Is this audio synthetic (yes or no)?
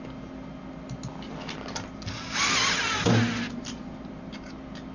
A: no